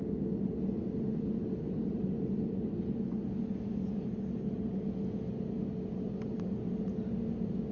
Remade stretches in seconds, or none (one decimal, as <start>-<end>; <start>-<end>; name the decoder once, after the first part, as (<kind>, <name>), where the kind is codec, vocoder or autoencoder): none